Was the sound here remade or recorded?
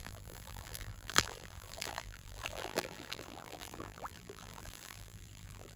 remade